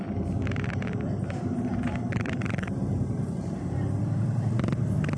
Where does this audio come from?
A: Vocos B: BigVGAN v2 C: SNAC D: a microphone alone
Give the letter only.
B